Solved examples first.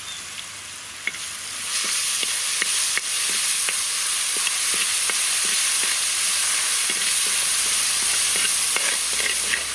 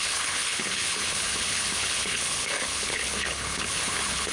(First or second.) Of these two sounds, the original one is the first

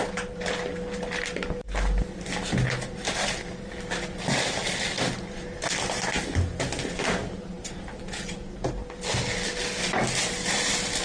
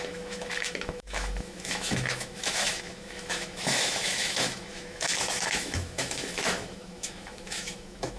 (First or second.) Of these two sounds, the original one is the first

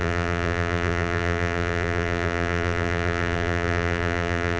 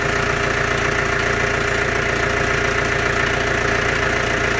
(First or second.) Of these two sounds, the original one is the second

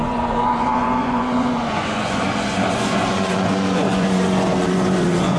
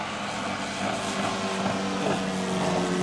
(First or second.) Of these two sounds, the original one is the second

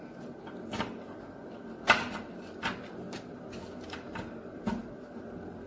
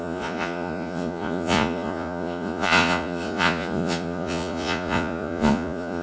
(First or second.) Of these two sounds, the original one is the first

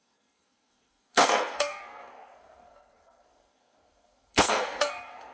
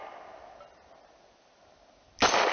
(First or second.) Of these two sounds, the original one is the second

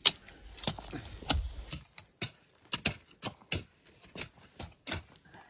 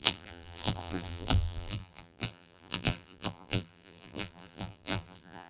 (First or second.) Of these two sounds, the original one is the first